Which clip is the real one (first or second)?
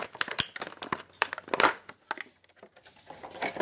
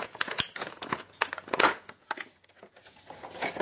first